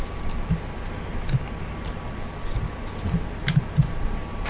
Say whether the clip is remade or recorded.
recorded